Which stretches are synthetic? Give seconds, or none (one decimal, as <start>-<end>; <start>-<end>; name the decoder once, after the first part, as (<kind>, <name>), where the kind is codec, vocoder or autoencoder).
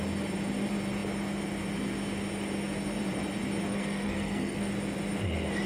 3.7-4.7 (codec, SNAC)